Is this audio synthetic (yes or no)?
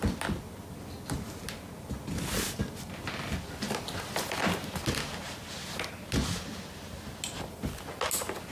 no